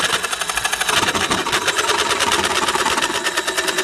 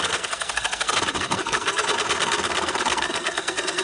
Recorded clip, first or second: first